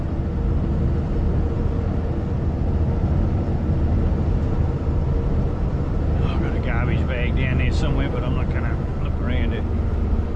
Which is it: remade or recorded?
recorded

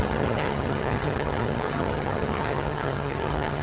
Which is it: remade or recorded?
remade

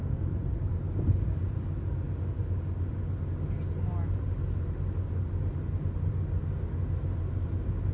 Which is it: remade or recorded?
recorded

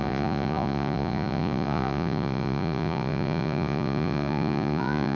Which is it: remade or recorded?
remade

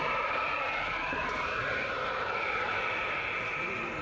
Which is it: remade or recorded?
remade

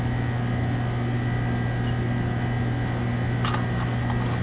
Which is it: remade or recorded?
recorded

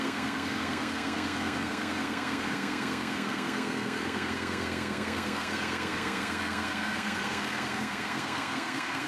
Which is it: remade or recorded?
remade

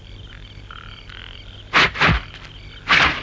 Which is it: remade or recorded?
recorded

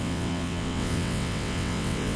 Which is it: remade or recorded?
remade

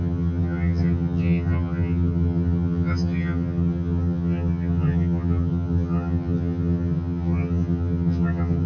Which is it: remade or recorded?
remade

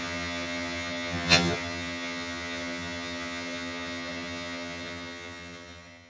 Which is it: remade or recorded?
remade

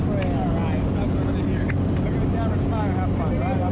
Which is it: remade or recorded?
recorded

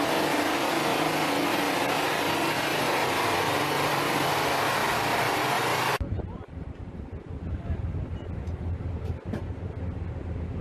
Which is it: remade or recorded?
recorded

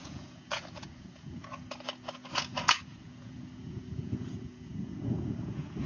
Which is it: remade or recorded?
remade